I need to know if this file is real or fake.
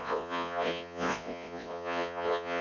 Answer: fake